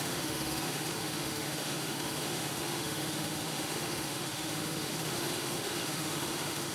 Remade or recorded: remade